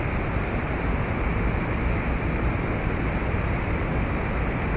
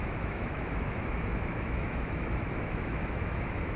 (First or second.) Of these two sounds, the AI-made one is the second